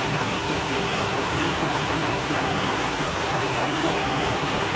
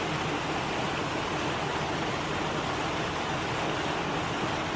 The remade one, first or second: first